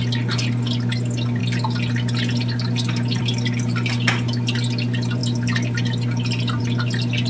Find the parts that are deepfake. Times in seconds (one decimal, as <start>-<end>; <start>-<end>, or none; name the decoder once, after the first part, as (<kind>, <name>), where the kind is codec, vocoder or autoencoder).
none